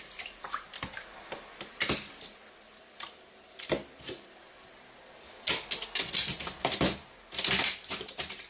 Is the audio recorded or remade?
recorded